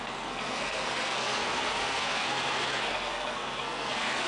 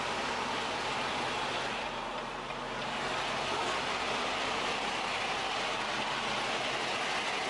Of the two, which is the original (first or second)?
second